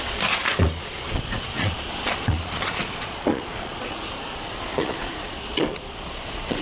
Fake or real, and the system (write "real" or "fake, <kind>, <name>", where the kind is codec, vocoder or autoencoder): fake, vocoder, Vocos